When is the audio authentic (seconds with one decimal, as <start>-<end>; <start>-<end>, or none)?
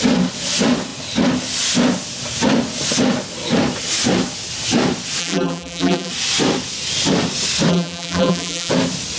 0.0-5.2; 6.1-7.7; 8.7-9.2